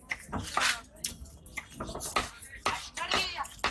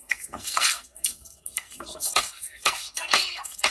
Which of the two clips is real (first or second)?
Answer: first